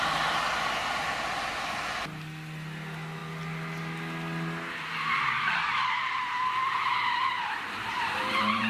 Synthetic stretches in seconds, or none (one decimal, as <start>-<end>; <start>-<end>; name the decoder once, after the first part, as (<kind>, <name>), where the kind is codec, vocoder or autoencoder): 7.2-8.7 (vocoder, BigVGAN v2)

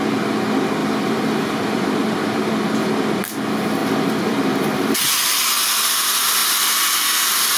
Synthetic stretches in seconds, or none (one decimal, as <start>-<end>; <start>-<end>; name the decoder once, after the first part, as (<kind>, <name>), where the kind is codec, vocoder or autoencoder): 0.8-2.5 (vocoder, BigVGAN v2); 3.8-5.0; 6.4-7.6

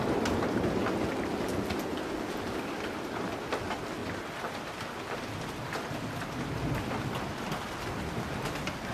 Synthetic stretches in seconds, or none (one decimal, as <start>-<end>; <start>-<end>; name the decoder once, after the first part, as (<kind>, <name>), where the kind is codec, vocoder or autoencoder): none

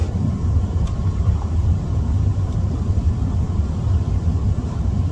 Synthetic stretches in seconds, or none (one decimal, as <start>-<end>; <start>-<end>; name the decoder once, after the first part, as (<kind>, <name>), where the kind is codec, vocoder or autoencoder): 0.0-3.1 (vocoder, BigVGAN v2); 4.4-5.1

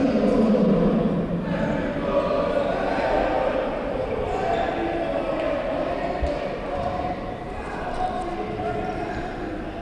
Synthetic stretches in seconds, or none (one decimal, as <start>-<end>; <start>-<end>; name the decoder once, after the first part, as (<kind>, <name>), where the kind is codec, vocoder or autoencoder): none